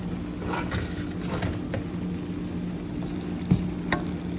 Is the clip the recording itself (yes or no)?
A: yes